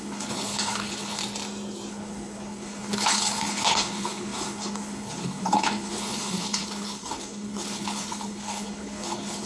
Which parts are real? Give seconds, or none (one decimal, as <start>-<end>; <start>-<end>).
1.2-1.9

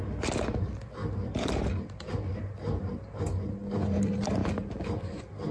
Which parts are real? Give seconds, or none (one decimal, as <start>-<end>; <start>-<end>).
0.0-5.5

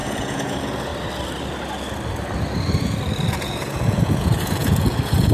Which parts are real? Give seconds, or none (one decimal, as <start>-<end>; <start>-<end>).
0.9-3.3

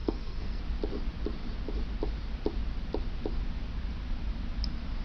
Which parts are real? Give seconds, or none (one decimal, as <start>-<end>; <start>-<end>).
0.6-5.0

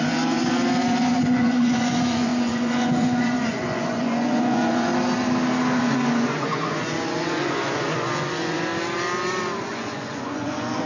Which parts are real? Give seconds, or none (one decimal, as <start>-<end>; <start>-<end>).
4.9-5.8; 8.7-9.6